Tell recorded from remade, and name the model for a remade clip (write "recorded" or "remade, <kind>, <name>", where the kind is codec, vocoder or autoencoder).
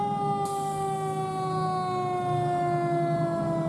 recorded